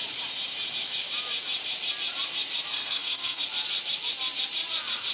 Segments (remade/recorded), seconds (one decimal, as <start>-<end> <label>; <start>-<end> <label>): 0.0-2.7 recorded; 2.7-3.4 remade; 3.4-5.1 recorded